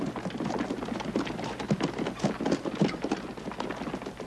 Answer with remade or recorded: recorded